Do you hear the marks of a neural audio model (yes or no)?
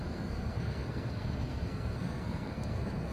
yes